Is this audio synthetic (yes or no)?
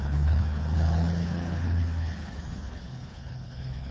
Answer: yes